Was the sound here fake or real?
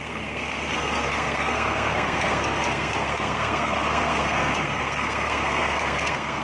fake